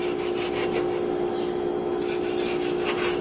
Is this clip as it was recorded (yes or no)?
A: yes